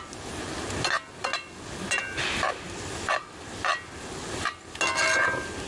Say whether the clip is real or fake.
real